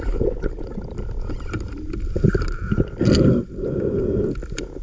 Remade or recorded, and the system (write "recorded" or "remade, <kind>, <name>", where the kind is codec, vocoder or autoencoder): recorded